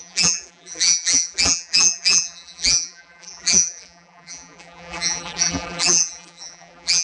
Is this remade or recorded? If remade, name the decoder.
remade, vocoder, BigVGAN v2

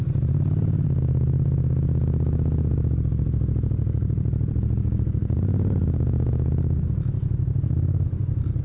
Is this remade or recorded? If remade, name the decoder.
remade, vocoder, BigVGAN v2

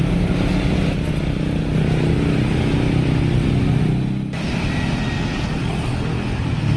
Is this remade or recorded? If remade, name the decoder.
recorded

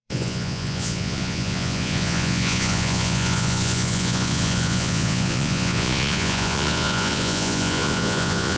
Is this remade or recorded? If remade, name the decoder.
remade, vocoder, Vocos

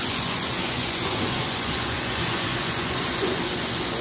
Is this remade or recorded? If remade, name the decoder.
remade, vocoder, Vocos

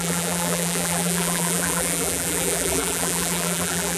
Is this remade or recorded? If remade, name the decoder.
remade, vocoder, BigVGAN v2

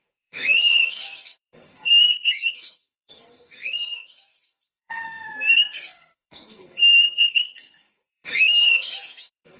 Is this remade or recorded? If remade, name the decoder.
remade, codec, SNAC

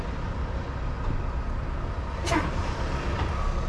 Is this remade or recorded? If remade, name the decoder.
recorded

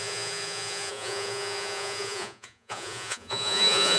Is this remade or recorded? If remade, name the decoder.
remade, vocoder, Vocos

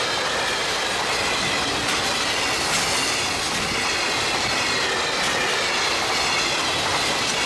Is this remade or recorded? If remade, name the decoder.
recorded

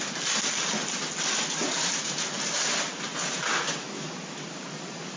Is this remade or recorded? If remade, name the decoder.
recorded